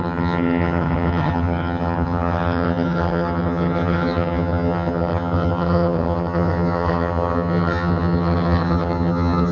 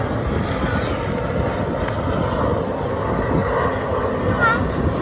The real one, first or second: second